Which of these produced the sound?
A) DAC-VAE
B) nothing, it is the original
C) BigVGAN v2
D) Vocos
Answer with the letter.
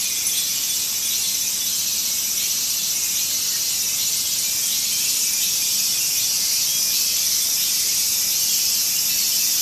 B